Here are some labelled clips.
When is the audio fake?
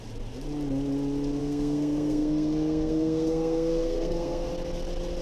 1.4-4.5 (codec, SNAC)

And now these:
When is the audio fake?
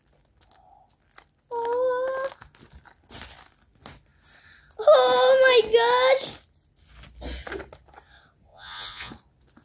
8.5-9.1 (vocoder, Vocos)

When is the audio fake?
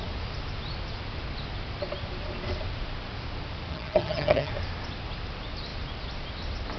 3.7-4.5 (vocoder, HiFi-GAN)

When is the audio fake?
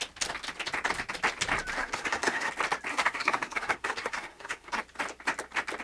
1.8-2.5 (codec, SNAC); 2.9-4.8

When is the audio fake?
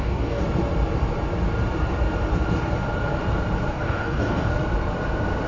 0.0-0.4 (codec, DAC); 3.7-4.5